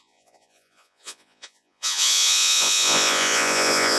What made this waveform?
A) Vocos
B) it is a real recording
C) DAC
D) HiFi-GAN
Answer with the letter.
A